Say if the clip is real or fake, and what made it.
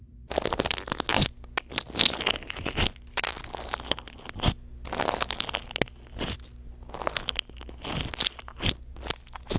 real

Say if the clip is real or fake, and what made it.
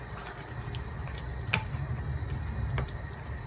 real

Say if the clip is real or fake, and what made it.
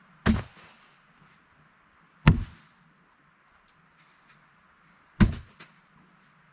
real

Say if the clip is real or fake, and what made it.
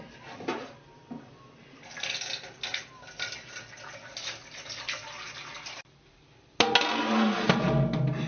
real